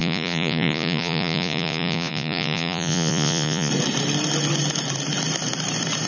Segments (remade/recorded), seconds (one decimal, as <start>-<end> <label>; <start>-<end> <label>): 0.0-3.7 remade; 3.7-6.1 recorded